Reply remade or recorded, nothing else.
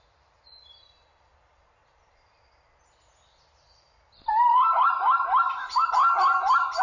recorded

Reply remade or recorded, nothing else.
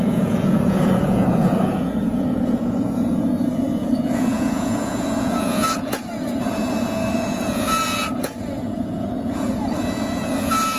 remade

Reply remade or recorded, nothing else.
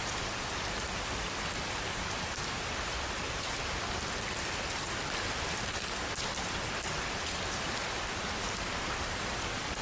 recorded